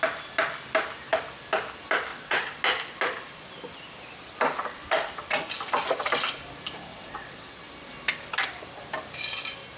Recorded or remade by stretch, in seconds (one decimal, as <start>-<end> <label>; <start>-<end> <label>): 0.0-2.1 recorded; 2.1-2.6 remade; 2.6-6.9 recorded; 6.9-7.6 remade; 7.6-9.8 recorded